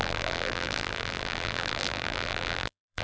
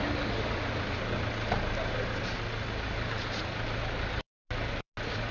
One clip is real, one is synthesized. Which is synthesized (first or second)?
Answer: first